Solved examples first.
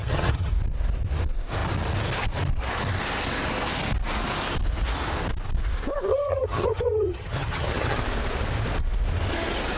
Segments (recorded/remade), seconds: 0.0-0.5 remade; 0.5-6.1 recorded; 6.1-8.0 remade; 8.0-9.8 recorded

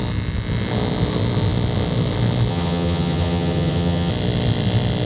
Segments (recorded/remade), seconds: 0.0-2.5 recorded; 2.5-4.1 remade; 4.1-5.1 recorded